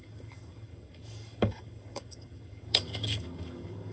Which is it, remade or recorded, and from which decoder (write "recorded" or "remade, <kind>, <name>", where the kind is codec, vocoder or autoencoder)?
remade, codec, DAC